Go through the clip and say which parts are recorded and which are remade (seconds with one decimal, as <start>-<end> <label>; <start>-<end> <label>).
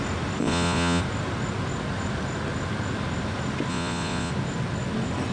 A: 0.0-0.4 recorded; 0.4-1.0 remade; 1.0-3.7 recorded; 3.7-4.3 remade; 4.3-5.3 recorded